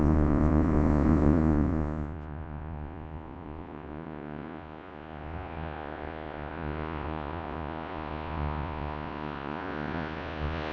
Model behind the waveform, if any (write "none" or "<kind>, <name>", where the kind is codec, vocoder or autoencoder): vocoder, Vocos